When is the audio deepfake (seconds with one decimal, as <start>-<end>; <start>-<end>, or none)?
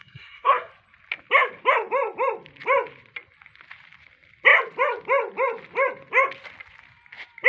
0.0-0.7